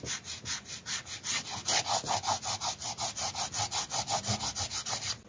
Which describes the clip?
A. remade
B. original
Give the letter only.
B